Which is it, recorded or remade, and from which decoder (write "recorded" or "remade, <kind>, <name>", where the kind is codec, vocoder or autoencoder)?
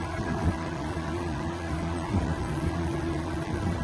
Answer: remade, vocoder, Vocos